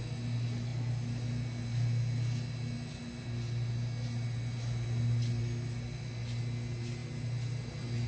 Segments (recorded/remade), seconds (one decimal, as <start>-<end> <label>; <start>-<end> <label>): 0.0-8.1 recorded